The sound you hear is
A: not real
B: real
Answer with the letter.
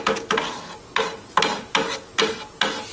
B